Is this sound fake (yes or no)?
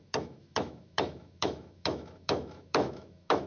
yes